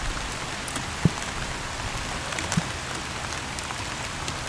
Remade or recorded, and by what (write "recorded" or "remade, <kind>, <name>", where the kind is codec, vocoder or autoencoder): recorded